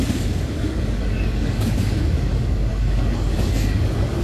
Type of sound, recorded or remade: remade